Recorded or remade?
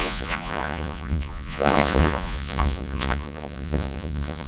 remade